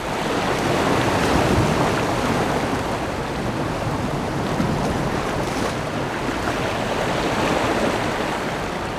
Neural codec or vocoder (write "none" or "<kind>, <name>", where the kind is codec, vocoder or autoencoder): none